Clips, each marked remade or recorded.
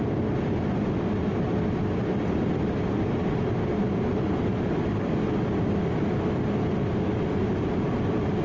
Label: recorded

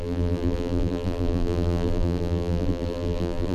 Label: remade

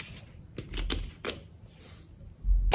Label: recorded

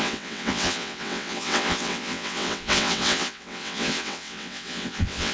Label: remade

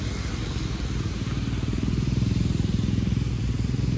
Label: recorded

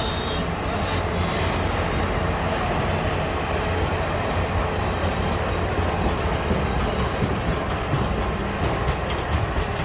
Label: recorded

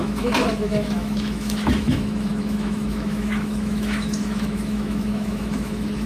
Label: remade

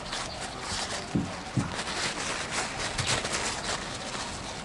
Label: recorded